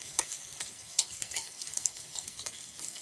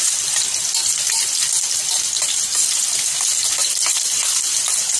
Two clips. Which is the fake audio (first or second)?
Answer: first